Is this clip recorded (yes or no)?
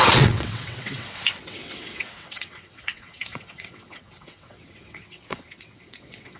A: no